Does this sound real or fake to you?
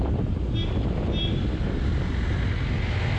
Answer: real